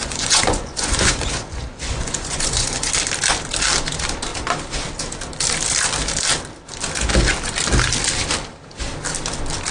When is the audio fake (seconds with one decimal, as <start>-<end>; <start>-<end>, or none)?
0.0-2.9